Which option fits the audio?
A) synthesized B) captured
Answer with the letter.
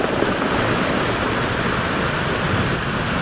B